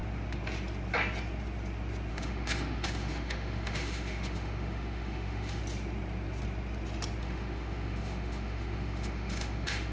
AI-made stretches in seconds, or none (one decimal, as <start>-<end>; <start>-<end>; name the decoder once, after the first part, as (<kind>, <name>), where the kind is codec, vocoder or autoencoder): 2.1-5.6 (autoencoder, DAC-VAE); 7.2-9.9